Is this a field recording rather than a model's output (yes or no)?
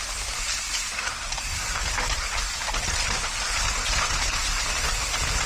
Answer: yes